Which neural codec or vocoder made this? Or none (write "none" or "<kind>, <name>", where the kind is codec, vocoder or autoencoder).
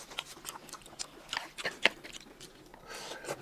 none